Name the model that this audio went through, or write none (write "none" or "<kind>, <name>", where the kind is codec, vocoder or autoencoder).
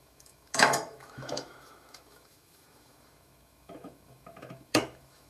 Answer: autoencoder, DAC-VAE